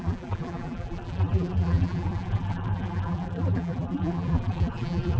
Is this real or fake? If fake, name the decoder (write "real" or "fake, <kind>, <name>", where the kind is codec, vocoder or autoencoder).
fake, vocoder, BigVGAN v2